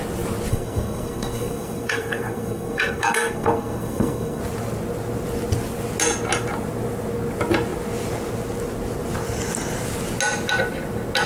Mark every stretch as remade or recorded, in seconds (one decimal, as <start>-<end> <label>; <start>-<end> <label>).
0.0-0.5 recorded; 0.5-4.4 remade; 4.4-11.3 recorded